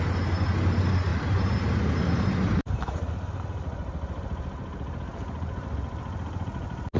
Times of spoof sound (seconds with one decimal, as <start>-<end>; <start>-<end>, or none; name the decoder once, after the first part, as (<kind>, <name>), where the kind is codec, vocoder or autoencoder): 1.1-3.1 (vocoder, BigVGAN v2); 4.6-5.1